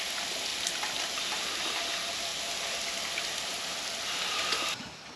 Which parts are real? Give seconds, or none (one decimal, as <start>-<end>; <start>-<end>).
0.0-5.2